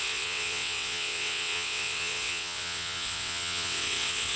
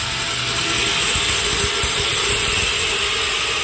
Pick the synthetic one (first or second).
first